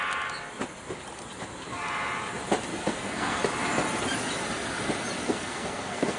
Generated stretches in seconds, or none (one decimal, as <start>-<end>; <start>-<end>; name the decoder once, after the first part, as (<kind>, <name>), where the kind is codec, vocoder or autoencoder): 2.7-3.4 (codec, SNAC); 5.2-6.2